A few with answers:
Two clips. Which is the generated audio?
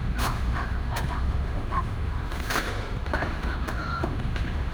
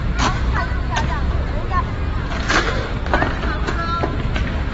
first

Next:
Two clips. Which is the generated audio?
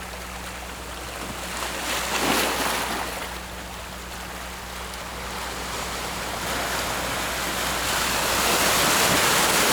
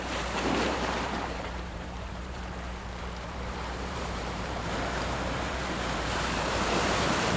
second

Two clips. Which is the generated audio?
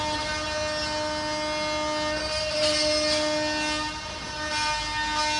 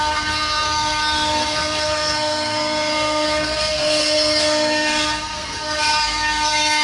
second